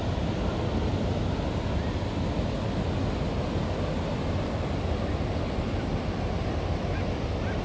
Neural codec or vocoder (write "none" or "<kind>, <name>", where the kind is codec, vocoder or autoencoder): none